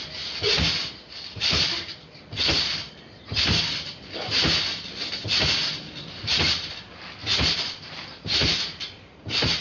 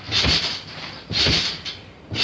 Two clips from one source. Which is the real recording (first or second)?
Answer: second